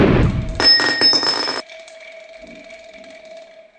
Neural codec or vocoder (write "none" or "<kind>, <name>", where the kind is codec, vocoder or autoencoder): none